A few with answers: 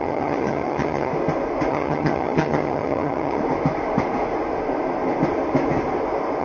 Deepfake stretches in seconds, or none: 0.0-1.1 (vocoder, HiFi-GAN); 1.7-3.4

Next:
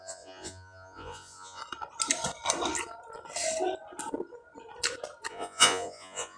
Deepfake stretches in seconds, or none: 0.0-1.6 (vocoder, Vocos); 5.3-6.4

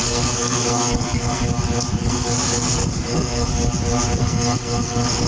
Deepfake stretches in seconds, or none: 0.0-1.4 (codec, SNAC); 2.0-3.5; 4.2-5.3